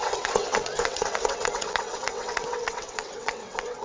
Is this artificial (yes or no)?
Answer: yes